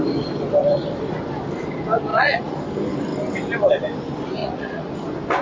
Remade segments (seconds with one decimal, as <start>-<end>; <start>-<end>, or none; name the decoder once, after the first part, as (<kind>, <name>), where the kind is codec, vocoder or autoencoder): 2.1-2.6 (vocoder, Vocos); 4.4-4.9